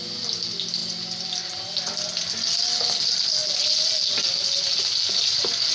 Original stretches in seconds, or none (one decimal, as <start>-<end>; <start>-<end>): 0.0-5.7